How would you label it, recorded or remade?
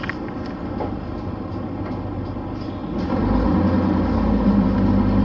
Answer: recorded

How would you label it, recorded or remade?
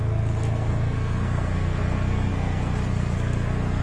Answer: remade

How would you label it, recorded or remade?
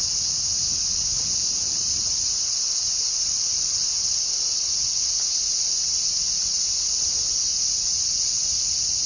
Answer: recorded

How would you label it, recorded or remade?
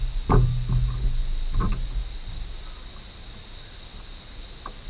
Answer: recorded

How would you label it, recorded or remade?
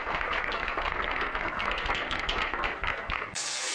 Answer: remade